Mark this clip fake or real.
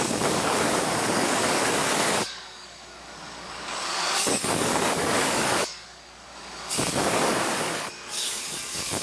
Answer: fake